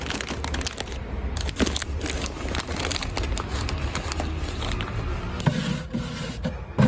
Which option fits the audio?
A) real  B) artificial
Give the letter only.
A